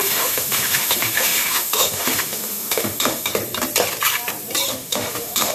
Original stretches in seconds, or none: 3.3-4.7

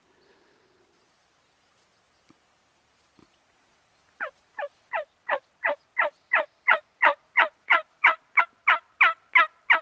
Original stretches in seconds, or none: 0.0-3.2; 8.4-9.8